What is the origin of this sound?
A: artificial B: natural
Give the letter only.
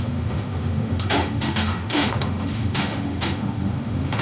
A